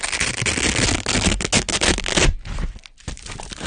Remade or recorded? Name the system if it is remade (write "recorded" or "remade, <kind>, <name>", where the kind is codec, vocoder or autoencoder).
recorded